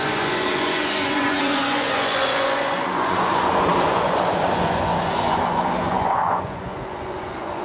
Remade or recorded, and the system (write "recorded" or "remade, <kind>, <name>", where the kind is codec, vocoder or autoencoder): remade, vocoder, Vocos